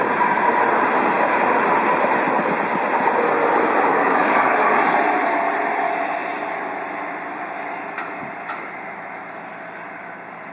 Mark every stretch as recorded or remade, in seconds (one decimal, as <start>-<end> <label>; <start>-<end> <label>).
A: 0.0-3.9 recorded; 3.9-5.0 remade; 5.0-10.5 recorded